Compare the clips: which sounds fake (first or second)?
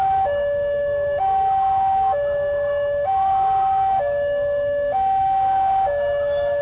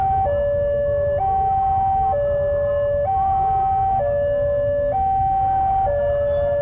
first